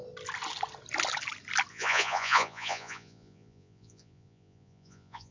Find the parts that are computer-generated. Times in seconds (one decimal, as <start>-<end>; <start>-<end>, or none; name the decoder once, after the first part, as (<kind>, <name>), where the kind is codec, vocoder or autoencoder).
1.7-5.3 (vocoder, Vocos)